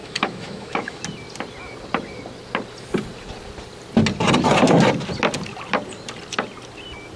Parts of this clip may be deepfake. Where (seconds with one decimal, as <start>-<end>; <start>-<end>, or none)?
0.0-1.0